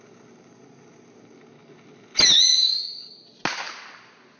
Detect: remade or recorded recorded